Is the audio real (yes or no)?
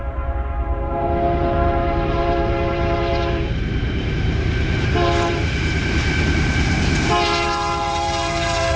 no